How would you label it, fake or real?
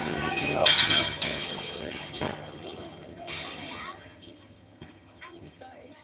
fake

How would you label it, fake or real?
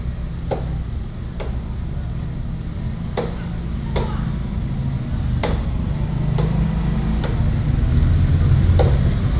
real